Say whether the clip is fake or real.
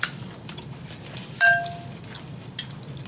real